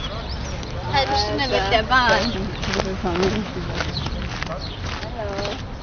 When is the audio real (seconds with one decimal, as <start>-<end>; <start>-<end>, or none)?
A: 0.0-3.0; 3.9-5.8